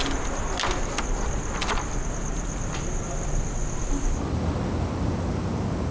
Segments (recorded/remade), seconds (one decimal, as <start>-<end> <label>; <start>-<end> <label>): 0.0-5.9 recorded